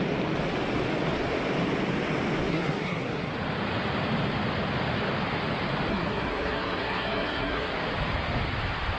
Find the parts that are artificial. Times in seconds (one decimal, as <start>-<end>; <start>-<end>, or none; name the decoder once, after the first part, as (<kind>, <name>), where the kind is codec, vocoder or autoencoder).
2.5-3.3 (codec, SNAC); 5.9-7.7